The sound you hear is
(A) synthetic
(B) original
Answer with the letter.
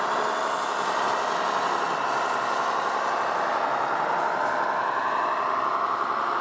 B